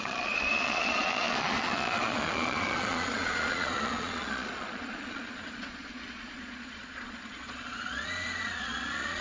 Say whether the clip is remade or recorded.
remade